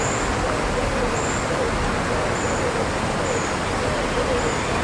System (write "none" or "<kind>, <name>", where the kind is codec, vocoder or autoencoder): none